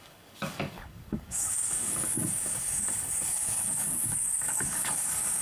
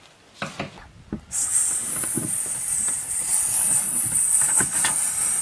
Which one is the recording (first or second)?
second